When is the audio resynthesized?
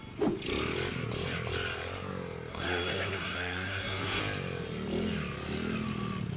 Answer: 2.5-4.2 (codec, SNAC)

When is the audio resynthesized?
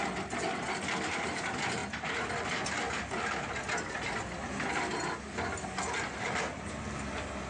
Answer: none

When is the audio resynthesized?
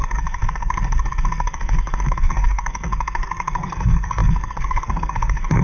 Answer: 0.0-5.6 (codec, SNAC)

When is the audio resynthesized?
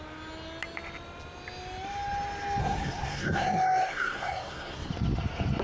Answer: 2.6-4.9 (codec, SNAC)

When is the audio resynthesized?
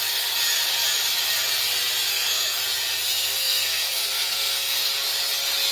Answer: 2.1-2.6 (codec, SNAC); 3.3-4.9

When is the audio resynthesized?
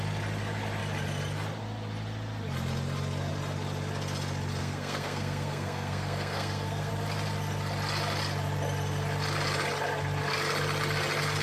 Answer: 4.6-6.9 (codec, SNAC)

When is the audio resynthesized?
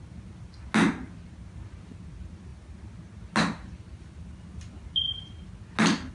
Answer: none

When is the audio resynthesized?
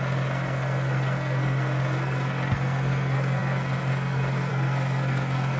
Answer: 0.0-5.6 (codec, SNAC)